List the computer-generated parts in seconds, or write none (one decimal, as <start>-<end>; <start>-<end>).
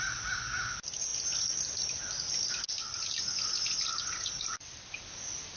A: none